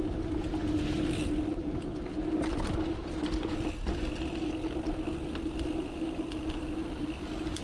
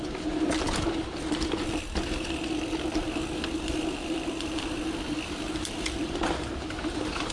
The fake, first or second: second